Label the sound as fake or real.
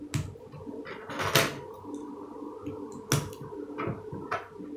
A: real